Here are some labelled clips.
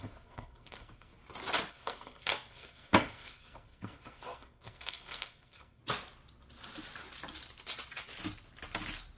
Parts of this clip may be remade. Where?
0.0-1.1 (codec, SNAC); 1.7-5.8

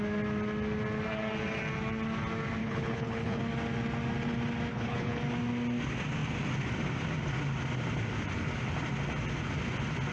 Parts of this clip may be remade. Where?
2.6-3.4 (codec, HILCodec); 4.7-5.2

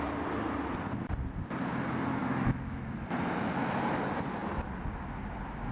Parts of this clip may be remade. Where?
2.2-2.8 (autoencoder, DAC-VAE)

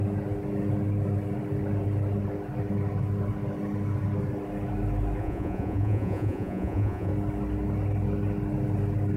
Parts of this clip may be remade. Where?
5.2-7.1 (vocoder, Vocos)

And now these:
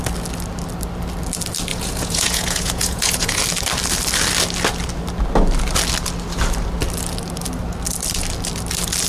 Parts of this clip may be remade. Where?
1.7-3.4 (vocoder, Vocos)

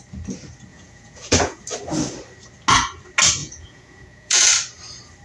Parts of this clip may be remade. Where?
0.7-1.6 (vocoder, Vocos); 3.4-4.5